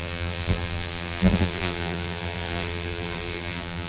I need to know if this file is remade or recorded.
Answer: remade